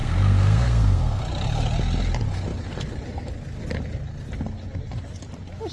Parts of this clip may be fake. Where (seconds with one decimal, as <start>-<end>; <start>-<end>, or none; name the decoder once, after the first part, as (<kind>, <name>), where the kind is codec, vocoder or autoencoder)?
0.0-1.2 (codec, SNAC)